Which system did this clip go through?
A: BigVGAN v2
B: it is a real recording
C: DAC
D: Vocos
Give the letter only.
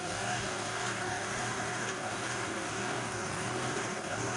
C